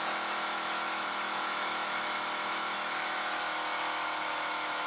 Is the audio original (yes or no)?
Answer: no